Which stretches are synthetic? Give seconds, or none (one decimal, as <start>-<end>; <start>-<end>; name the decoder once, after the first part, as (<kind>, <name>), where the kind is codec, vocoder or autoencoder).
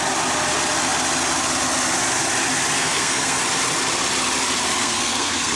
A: 2.8-3.4 (codec, SNAC); 4.8-5.6